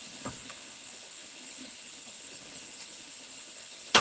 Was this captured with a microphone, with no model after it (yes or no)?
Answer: no